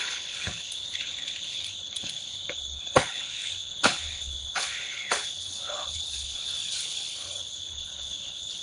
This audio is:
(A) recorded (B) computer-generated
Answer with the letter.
B